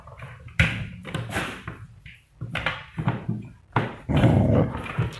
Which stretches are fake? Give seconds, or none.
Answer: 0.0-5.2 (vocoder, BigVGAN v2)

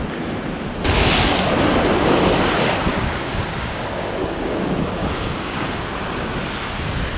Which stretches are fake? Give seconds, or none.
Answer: 2.9-4.6 (codec, DAC); 5.0-5.8

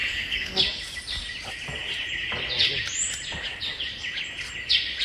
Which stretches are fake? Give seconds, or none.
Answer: 0.0-0.6 (codec, SNAC)

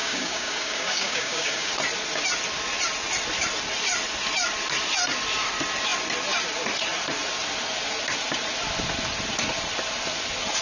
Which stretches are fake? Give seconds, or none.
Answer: 0.0-1.7 (codec, DAC)

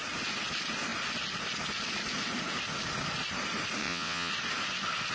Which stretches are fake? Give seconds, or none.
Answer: 3.8-4.3 (vocoder, WaveNeXt)

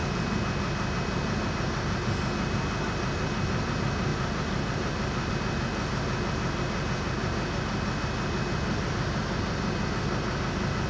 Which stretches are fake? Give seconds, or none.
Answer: 4.1-5.3 (vocoder, BigVGAN v2)